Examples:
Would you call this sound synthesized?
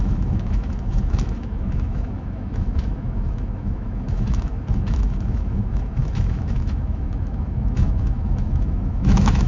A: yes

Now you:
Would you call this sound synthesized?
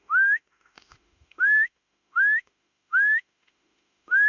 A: yes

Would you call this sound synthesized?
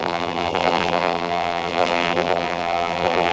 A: yes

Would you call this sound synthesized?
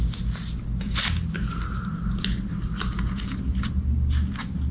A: no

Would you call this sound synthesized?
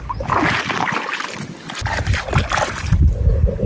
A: no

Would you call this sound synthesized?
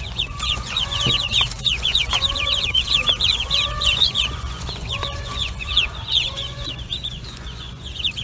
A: yes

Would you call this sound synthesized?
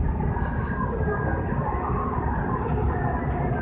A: no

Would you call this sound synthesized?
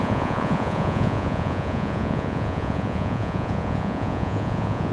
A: yes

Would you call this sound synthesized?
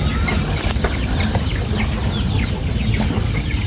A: no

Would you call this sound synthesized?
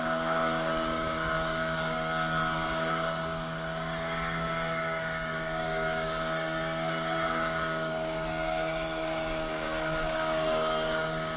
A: yes